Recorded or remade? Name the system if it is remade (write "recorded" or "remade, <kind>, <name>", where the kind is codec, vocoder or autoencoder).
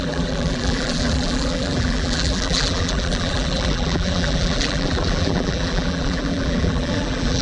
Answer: remade, vocoder, BigVGAN v2